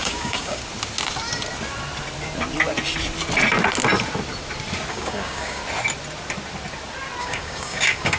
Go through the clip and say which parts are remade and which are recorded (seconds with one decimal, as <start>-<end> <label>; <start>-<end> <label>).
0.0-0.6 remade; 0.6-4.9 recorded; 4.9-5.6 remade; 5.6-7.2 recorded; 7.2-8.2 remade